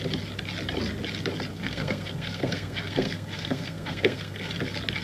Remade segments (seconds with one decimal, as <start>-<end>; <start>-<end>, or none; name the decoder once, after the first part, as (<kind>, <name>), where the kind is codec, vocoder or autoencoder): 1.5-4.5 (codec, SNAC)